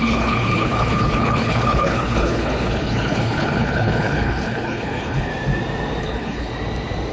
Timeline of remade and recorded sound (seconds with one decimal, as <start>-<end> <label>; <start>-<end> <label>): 0.0-5.3 remade; 5.3-6.0 recorded; 6.0-6.5 remade; 6.5-7.1 recorded